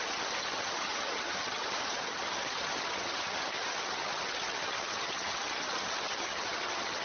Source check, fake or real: fake